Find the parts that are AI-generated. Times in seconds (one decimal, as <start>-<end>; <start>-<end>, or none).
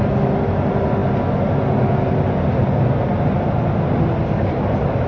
none